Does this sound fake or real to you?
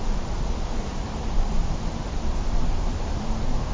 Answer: fake